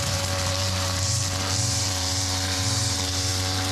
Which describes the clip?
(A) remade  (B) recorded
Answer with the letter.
A